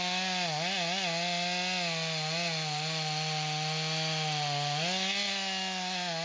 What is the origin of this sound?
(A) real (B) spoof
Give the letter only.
A